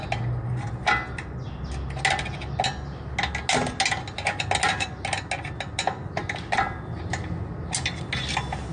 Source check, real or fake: real